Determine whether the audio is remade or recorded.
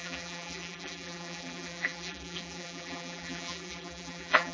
remade